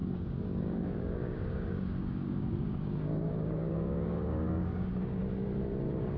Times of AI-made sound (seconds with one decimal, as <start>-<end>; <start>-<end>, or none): 0.0-5.2